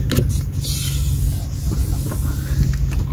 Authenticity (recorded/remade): recorded